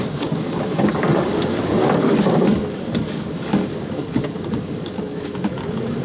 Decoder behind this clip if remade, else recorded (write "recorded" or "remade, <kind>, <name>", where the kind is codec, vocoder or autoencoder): remade, codec, DAC